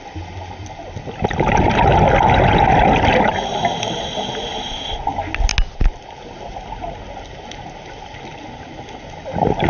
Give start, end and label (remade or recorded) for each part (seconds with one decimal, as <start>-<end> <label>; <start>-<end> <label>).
0.0-9.7 recorded